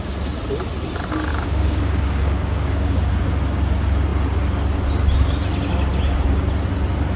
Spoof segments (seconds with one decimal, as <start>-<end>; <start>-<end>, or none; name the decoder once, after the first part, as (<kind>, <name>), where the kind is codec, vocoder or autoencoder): 1.3-3.1 (codec, DAC)